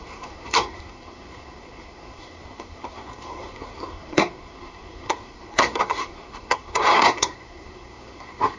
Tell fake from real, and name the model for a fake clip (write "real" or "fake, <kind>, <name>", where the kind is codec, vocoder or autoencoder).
fake, codec, SNAC